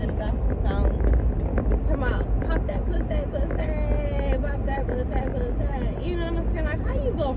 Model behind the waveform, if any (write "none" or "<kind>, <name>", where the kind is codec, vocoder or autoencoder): none